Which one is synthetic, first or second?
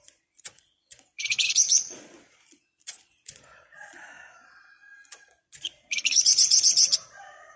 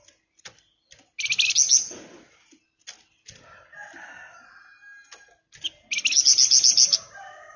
first